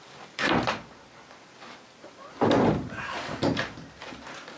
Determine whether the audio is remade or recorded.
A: recorded